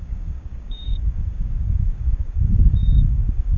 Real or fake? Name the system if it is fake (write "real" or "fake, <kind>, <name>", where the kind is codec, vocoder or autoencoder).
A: fake, codec, DAC